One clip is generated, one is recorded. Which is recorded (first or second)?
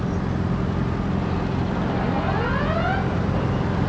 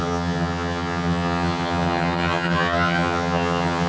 first